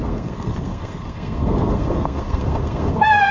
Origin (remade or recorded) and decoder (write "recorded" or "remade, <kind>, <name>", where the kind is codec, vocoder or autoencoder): remade, codec, SNAC